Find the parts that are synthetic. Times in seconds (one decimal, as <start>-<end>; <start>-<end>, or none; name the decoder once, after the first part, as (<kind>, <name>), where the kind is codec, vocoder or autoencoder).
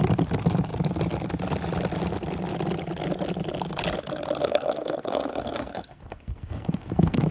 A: 4.4-7.3 (codec, SNAC)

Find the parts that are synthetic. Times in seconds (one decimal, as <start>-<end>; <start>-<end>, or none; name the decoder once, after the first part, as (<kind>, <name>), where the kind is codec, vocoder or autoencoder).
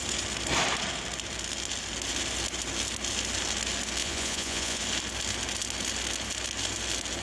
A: 4.0-4.8 (vocoder, Vocos)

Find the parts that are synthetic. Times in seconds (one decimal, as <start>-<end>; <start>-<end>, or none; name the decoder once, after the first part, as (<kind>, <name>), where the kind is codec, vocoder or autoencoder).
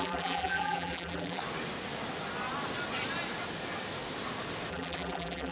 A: 0.0-1.4 (vocoder, BigVGAN v2); 4.7-5.5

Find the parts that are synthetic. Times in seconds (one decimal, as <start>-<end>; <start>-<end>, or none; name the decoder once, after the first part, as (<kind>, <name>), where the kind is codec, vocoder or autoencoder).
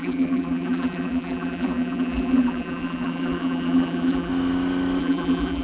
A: 0.0-4.3 (vocoder, BigVGAN v2); 5.0-5.6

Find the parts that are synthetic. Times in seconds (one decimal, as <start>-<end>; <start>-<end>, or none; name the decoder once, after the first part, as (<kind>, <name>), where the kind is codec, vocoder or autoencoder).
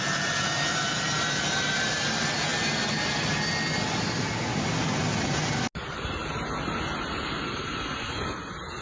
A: none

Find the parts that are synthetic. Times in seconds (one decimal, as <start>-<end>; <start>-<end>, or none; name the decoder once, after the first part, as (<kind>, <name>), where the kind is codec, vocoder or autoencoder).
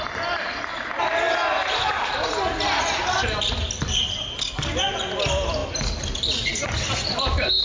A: none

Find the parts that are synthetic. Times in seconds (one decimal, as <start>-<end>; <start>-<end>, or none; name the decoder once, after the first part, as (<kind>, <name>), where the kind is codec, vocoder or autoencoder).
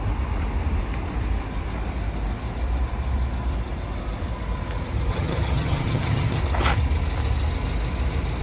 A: 5.1-6.4 (vocoder, HiFi-GAN)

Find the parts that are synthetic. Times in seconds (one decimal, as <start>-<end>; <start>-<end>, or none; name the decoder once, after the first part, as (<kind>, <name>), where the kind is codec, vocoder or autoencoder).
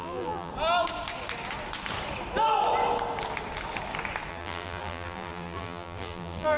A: 0.0-0.5 (vocoder, BigVGAN v2); 4.3-6.6